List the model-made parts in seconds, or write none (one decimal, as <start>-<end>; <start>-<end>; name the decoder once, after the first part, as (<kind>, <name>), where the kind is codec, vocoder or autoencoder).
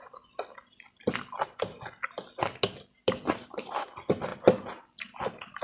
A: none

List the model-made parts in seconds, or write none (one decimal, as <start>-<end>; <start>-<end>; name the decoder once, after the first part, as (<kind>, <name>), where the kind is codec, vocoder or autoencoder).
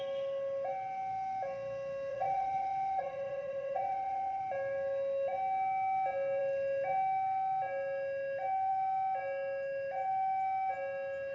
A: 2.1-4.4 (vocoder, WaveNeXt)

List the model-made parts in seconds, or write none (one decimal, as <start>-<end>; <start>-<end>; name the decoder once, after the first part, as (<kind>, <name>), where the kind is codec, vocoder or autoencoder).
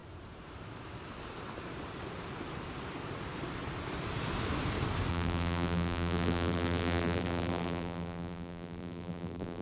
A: 5.1-9.6 (vocoder, BigVGAN v2)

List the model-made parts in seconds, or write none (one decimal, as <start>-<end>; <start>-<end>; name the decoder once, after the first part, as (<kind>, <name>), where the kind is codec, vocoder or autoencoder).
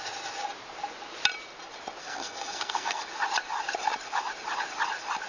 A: 2.0-3.1 (codec, SNAC)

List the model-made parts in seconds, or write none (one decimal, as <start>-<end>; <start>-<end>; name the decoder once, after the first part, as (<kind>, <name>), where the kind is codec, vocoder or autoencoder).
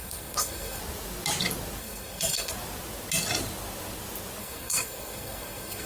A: 0.0-0.8 (codec, SNAC); 1.8-2.5; 4.4-5.9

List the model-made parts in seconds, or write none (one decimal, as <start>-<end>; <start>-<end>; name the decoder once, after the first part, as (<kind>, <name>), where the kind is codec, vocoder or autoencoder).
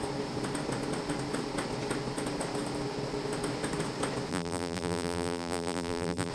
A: 4.3-6.3 (vocoder, BigVGAN v2)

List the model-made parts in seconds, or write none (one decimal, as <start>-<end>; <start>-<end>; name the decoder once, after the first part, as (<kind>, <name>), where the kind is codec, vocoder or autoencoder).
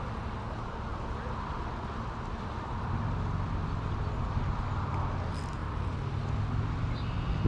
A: none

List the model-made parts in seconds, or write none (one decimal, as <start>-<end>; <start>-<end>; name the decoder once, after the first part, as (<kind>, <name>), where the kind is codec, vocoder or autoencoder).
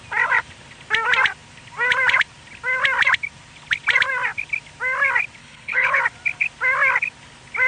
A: 5.4-6.0 (codec, HILCodec)